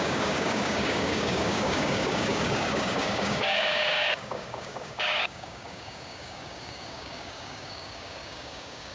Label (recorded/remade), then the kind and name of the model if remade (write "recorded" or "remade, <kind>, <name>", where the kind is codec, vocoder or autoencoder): remade, codec, DAC